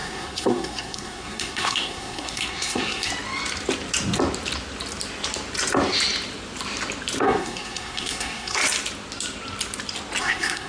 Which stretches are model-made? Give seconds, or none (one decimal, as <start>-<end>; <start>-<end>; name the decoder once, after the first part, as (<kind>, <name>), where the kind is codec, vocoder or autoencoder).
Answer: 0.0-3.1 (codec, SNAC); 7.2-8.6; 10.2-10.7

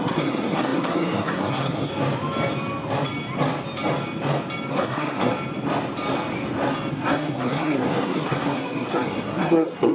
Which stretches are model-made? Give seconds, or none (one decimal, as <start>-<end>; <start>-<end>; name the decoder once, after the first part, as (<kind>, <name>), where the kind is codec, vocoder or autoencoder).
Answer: 0.0-1.9 (codec, SNAC); 4.7-5.3; 6.9-9.9

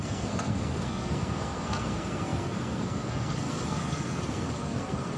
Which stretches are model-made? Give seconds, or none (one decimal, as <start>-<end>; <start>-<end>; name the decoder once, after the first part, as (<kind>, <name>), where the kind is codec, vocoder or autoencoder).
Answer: 0.0-5.2 (codec, SNAC)

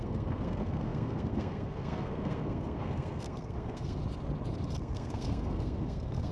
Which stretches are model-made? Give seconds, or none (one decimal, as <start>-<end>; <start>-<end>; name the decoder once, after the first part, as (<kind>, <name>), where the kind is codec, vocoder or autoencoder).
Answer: 0.0-4.0 (codec, SNAC); 4.8-6.3